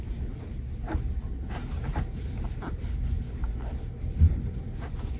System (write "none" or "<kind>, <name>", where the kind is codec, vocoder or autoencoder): none